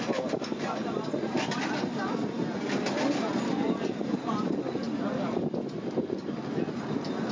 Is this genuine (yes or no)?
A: yes